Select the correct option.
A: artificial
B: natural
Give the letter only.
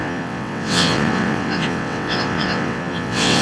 A